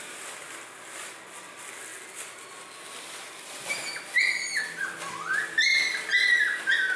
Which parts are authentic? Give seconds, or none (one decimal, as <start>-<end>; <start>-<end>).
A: 0.0-7.0